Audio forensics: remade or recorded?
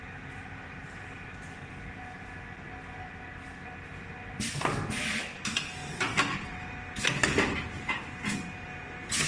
recorded